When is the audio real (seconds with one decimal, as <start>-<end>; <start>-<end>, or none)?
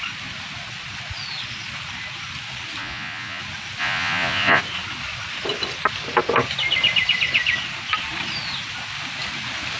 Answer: 0.0-2.8; 3.4-3.8; 4.6-9.8